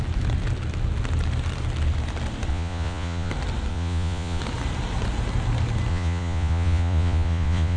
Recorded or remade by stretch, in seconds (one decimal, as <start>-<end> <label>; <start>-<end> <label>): 0.0-2.5 recorded; 2.5-3.3 remade; 3.3-3.7 recorded; 3.7-4.4 remade; 4.4-5.9 recorded; 5.9-7.8 remade